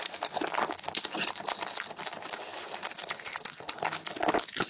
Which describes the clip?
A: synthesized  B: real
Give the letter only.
B